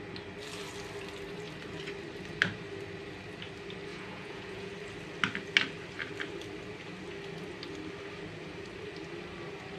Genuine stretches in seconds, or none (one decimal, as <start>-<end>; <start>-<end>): 0.0-3.9; 4.7-9.8